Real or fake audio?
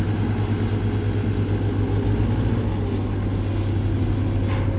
real